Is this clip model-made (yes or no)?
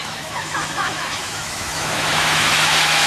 yes